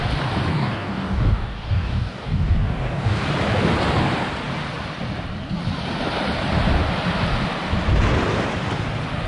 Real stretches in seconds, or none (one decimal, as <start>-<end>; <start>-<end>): 0.0-0.5; 3.2-9.3

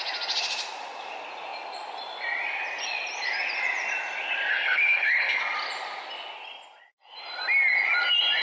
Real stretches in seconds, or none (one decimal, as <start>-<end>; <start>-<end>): 0.0-4.5; 5.4-8.4